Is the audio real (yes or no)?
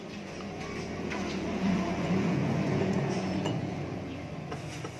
no